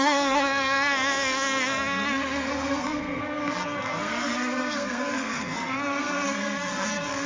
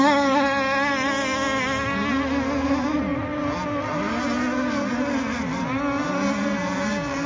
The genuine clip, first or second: second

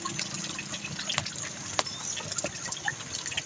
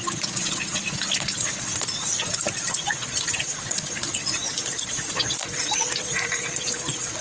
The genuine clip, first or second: first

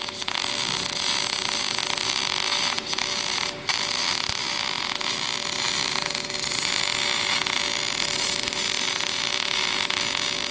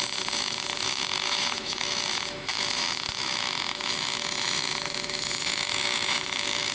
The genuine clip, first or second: first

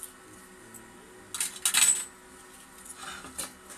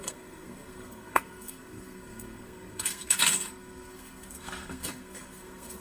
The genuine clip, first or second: first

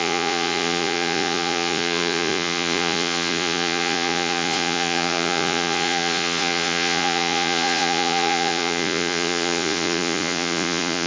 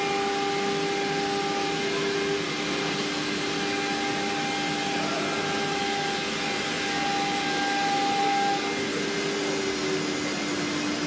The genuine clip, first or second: second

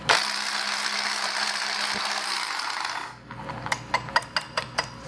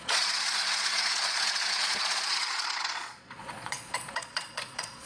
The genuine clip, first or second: first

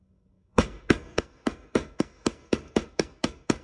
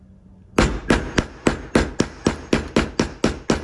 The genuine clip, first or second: second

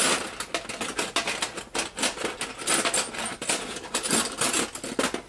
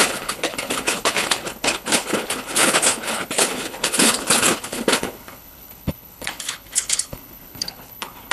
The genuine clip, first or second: first